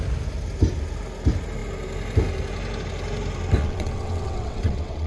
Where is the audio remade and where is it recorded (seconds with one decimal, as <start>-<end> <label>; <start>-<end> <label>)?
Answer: 0.0-3.6 recorded; 3.6-5.1 remade